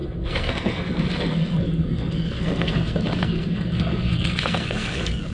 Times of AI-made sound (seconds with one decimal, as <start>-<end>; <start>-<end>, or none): 0.0-5.3